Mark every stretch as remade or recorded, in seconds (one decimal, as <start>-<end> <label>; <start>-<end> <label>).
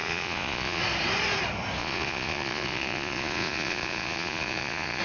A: 0.0-0.8 remade; 0.8-1.8 recorded; 1.8-5.0 remade